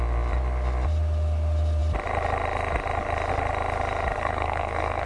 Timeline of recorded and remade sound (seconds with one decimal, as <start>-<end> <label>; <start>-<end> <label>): 0.0-4.2 recorded; 4.2-5.1 remade